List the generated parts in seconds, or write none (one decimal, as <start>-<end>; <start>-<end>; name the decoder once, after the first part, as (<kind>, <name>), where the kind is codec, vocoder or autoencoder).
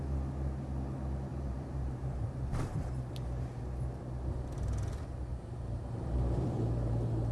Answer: 1.3-3.6 (vocoder, BigVGAN v2); 5.3-6.7